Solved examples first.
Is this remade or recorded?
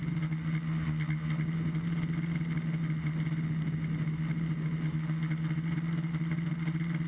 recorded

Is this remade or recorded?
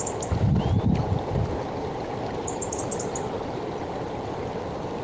recorded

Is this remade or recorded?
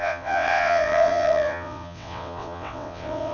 remade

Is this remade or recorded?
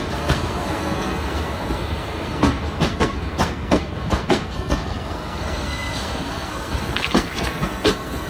remade